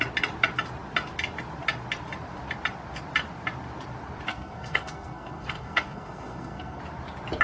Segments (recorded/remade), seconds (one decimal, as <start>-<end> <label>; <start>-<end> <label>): 0.0-4.3 recorded; 4.3-6.8 remade; 6.8-7.4 recorded